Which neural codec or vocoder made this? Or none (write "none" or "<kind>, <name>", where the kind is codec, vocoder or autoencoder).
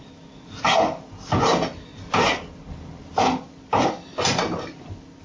none